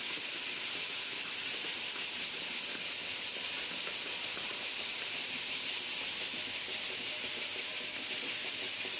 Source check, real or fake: fake